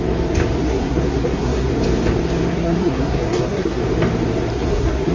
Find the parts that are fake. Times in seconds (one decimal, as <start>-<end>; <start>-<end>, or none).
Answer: 0.6-1.7; 2.5-3.8; 4.5-5.1

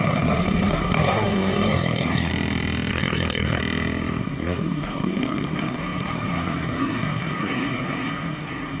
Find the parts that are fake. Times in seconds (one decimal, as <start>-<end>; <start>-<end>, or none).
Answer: 0.0-2.3; 2.9-3.6; 4.2-8.8

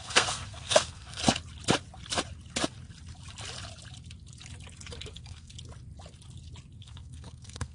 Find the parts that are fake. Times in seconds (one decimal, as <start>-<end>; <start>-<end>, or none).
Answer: 0.0-1.2; 5.1-5.5; 6.8-7.7